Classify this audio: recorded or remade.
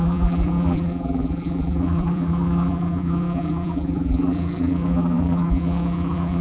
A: remade